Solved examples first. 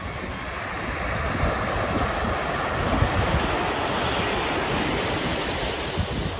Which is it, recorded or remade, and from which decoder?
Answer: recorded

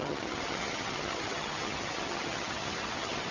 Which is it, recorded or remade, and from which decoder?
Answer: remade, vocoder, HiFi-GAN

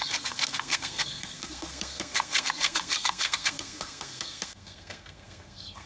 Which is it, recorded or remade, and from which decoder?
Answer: remade, codec, SNAC